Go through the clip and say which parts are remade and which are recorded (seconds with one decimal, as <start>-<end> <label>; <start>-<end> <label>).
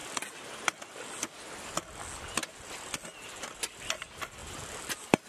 0.0-4.4 recorded; 4.4-5.3 remade